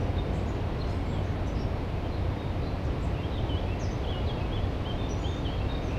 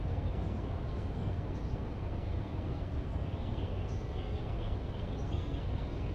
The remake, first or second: second